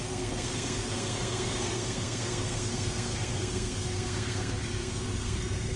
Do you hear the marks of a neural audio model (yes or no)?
yes